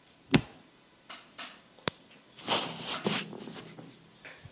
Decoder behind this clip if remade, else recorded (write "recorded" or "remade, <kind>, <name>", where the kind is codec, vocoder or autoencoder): recorded